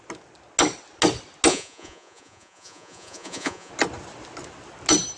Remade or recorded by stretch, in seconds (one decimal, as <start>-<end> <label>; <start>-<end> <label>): 0.0-1.5 recorded; 1.5-3.7 remade; 3.7-5.2 recorded